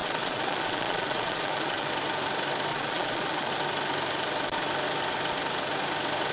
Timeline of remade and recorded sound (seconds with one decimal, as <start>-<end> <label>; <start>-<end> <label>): 0.0-1.9 remade; 1.9-2.7 recorded; 2.7-3.5 remade; 3.5-6.3 recorded